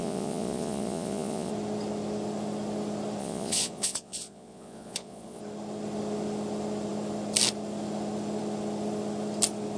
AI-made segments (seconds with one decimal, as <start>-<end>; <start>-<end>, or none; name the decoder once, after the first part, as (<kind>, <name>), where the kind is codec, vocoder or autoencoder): 0.0-1.5 (vocoder, Vocos); 3.2-5.4